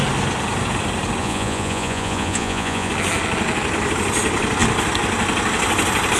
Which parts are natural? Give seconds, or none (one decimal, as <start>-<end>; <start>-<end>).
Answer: 0.0-1.2; 2.9-6.2